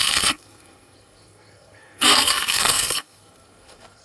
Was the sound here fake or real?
fake